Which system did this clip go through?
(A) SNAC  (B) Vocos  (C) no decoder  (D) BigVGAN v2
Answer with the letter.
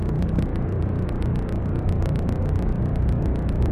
C